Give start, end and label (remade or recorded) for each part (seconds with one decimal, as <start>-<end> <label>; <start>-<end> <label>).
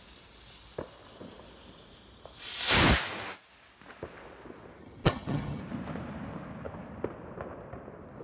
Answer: 0.0-4.8 recorded; 4.8-5.6 remade; 5.6-8.2 recorded